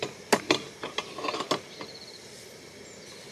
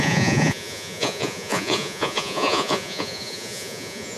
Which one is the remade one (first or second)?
second